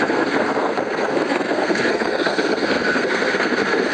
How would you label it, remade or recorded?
remade